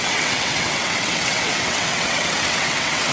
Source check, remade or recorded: remade